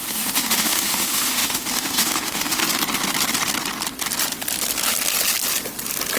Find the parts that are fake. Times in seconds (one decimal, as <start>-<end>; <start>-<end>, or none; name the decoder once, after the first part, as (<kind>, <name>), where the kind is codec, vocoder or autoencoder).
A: 0.0-2.6 (autoencoder, DAC-VAE)